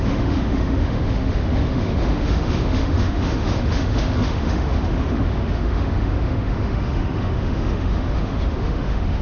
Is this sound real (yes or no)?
no